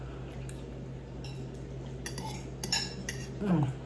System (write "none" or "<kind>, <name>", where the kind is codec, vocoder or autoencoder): none